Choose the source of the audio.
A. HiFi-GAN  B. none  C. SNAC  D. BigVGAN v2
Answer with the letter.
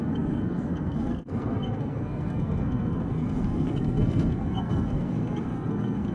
C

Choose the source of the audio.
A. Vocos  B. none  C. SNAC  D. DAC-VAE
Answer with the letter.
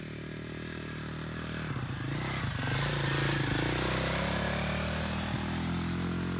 B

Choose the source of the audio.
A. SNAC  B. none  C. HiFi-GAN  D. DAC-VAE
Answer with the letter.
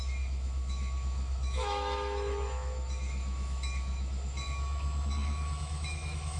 D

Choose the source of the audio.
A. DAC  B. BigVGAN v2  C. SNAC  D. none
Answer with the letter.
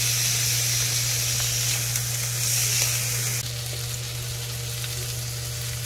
D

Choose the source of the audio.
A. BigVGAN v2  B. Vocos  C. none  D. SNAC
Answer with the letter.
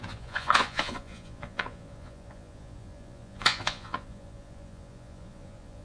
B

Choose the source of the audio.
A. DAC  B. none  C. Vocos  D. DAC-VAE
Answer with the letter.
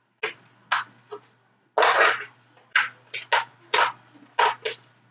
B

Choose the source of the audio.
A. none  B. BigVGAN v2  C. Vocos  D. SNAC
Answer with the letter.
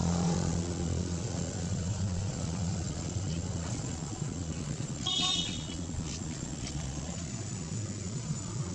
C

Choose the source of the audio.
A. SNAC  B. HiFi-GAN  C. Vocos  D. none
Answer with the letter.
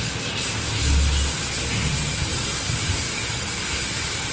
D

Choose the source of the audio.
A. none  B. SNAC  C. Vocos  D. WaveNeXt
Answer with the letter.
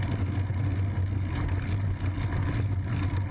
A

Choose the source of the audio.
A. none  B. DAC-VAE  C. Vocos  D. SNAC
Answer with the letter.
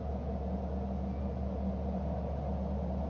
A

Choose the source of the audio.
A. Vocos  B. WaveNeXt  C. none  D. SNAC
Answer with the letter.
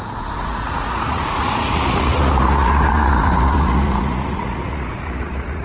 A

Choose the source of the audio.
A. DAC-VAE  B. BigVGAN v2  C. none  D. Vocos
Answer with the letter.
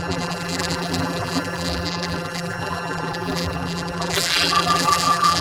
B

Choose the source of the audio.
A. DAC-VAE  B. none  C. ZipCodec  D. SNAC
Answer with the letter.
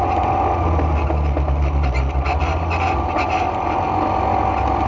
B